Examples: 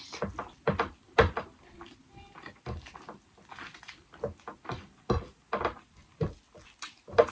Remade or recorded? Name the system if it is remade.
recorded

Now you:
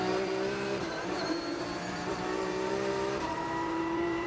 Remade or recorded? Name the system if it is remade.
remade, vocoder, BigVGAN v2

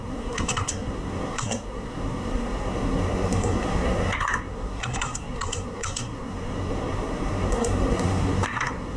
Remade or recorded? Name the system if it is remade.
remade, codec, SNAC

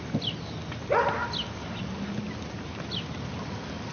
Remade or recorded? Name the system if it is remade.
recorded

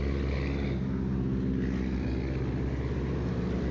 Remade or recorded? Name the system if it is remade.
recorded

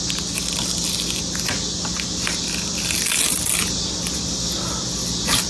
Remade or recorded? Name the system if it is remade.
recorded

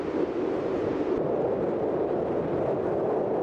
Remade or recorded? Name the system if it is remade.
remade, vocoder, BigVGAN v2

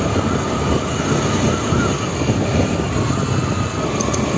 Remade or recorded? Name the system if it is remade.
recorded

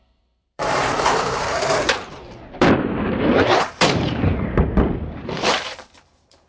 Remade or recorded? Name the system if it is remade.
remade, vocoder, BigVGAN v2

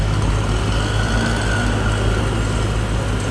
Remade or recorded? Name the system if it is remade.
recorded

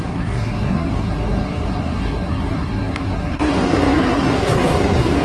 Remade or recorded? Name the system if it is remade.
remade, codec, SNAC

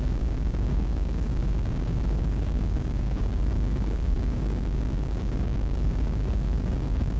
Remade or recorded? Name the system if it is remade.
remade, codec, DAC